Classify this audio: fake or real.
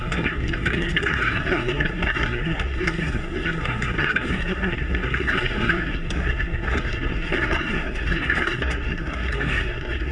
fake